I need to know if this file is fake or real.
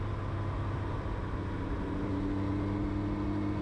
real